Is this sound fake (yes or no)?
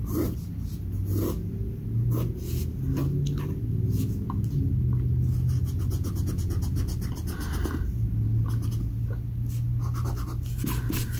no